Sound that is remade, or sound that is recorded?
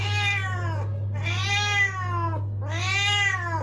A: recorded